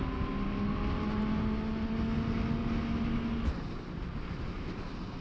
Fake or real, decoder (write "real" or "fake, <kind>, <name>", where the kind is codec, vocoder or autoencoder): real